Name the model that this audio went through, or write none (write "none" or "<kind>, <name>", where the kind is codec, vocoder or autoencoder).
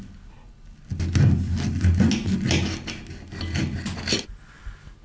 none